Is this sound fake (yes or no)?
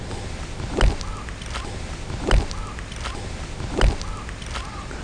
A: no